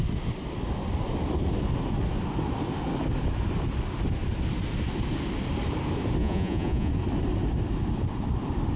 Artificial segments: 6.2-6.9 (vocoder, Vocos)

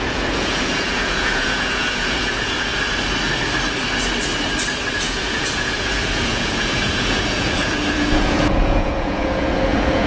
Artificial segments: 0.0-2.7 (vocoder, Vocos); 4.9-10.1

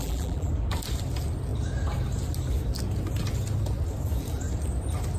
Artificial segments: 0.0-0.5 (vocoder, BigVGAN v2)